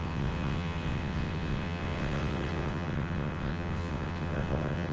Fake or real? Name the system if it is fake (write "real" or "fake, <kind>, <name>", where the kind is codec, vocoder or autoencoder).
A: fake, vocoder, WaveNeXt